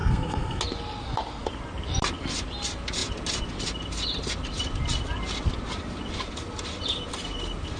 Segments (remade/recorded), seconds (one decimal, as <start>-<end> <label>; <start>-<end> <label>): 0.0-0.6 remade; 0.6-7.8 recorded